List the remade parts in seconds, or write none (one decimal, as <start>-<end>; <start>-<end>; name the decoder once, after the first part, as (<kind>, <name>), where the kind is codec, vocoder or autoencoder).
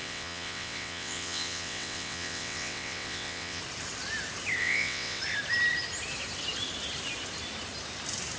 0.0-3.6 (vocoder, WaveNeXt); 4.6-5.2